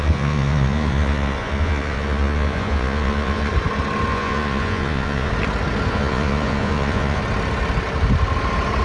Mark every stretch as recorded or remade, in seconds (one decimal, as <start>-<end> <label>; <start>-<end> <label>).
0.0-3.5 remade; 3.5-4.1 recorded; 4.1-5.3 remade; 5.3-5.9 recorded; 5.9-7.2 remade; 7.2-8.8 recorded